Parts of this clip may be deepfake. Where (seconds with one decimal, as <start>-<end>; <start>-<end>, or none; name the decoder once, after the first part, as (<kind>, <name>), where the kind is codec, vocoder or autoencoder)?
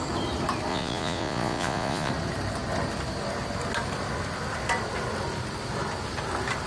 0.7-2.1 (vocoder, Vocos)